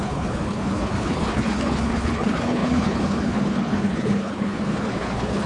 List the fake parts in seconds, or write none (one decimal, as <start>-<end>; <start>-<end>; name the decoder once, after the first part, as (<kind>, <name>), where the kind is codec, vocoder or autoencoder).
0.0-5.5 (codec, HILCodec)